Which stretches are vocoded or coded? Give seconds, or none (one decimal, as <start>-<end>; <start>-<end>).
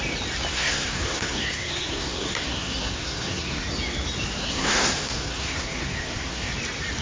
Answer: 0.5-3.6; 4.4-6.5